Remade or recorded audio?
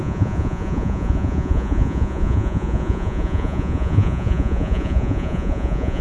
remade